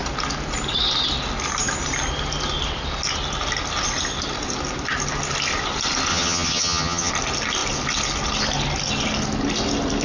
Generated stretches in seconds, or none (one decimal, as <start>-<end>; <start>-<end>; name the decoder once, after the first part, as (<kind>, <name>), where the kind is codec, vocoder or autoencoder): 6.1-7.1 (vocoder, HiFi-GAN)